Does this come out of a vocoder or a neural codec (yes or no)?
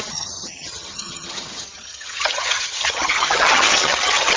yes